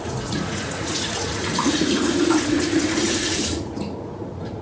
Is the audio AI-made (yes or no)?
yes